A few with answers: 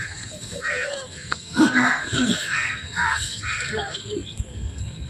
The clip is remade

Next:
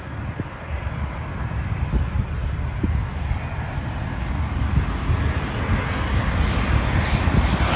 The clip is recorded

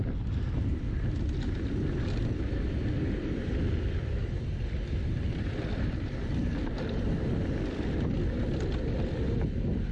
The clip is recorded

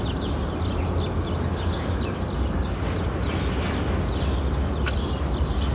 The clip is recorded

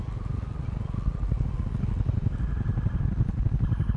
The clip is recorded